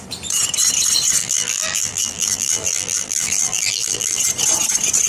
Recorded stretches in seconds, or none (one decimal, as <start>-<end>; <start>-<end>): 0.0-1.2; 4.2-5.1

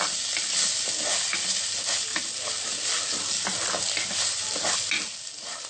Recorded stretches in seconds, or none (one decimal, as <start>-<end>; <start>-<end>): 0.0-5.7

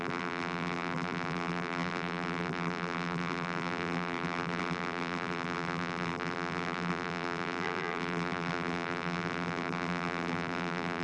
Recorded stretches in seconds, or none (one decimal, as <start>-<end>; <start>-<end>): none

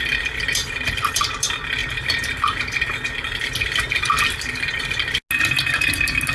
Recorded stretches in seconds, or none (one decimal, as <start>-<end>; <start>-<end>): 0.0-0.6; 1.2-6.3

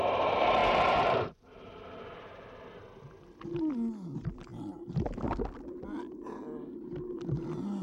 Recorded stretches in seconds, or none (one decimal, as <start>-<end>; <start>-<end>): 0.0-0.6; 1.7-7.8

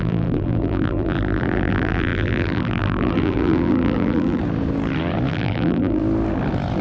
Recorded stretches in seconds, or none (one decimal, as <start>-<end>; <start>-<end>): 4.4-5.3; 6.0-6.8